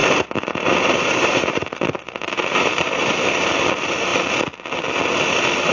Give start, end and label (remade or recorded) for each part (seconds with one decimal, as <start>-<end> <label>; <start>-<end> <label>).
0.0-3.4 remade; 3.4-5.7 recorded